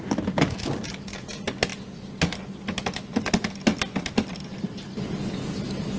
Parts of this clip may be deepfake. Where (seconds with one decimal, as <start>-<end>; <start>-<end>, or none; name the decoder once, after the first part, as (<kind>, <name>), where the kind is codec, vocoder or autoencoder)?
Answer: none